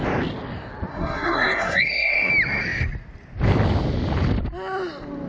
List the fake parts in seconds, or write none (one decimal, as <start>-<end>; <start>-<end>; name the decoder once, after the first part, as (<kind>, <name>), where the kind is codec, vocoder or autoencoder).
0.9-2.3 (codec, SNAC)